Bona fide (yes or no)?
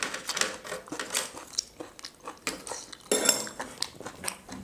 yes